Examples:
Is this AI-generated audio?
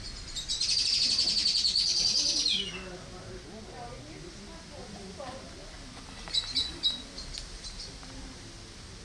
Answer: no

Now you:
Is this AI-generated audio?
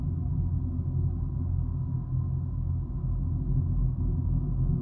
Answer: no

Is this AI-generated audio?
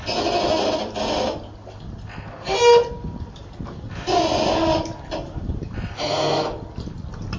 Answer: no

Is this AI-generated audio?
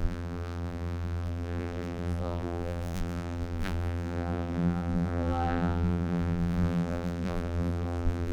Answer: yes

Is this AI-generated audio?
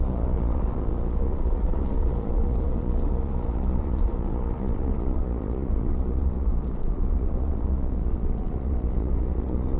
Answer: yes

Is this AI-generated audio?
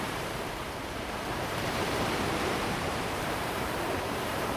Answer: yes